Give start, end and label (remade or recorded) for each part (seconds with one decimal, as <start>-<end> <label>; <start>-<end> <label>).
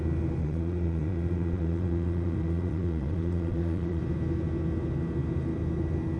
0.0-0.4 recorded; 0.4-4.0 remade; 4.0-6.2 recorded